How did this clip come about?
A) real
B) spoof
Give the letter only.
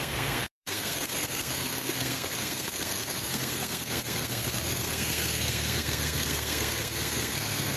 B